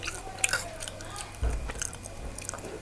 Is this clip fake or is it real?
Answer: fake